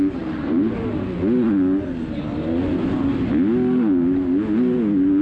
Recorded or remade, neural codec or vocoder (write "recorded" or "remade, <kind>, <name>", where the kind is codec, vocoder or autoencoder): recorded